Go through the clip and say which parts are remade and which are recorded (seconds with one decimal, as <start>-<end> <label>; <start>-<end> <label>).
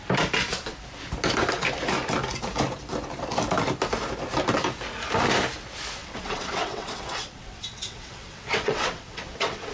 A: 0.0-6.0 recorded; 6.0-9.7 remade